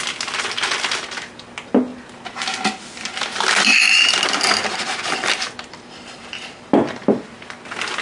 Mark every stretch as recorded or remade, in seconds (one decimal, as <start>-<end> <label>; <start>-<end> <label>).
0.0-8.0 recorded